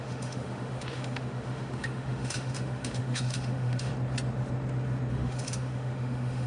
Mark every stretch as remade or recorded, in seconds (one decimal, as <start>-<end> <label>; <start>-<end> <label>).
0.0-3.9 remade; 3.9-5.1 recorded; 5.1-6.5 remade